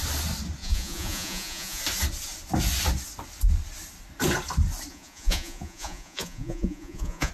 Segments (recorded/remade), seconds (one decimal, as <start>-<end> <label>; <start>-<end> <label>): 0.0-0.6 recorded; 0.6-1.8 remade; 1.8-4.9 recorded; 4.9-7.3 remade